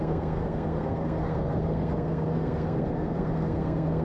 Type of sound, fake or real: fake